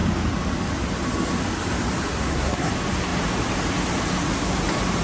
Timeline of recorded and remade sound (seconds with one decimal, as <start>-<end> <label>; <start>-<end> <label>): 0.0-2.1 recorded; 2.1-2.7 remade; 2.7-5.0 recorded